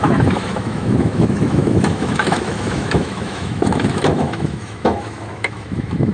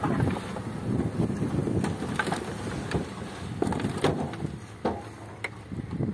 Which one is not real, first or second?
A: first